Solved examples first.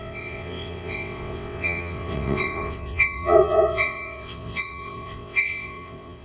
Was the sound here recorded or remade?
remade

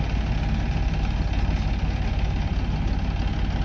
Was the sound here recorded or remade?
recorded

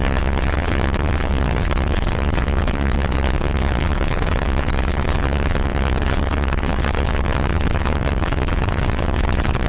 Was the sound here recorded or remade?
remade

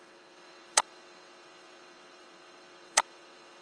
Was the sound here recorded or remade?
remade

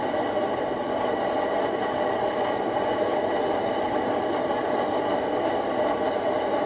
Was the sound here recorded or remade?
recorded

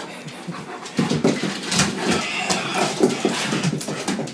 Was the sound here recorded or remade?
recorded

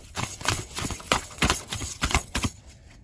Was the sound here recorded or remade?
remade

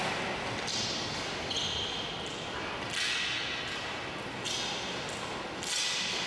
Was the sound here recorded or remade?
recorded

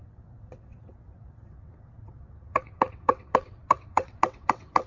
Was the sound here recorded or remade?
remade